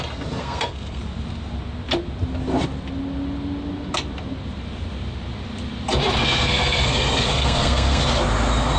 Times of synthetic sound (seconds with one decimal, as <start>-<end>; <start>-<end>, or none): 0.4-1.0; 6.2-8.0